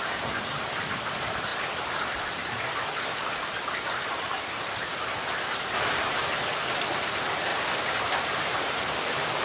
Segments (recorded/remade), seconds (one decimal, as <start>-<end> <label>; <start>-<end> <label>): 0.0-6.2 remade; 6.2-7.0 recorded; 7.0-7.5 remade; 7.5-8.4 recorded; 8.4-9.4 remade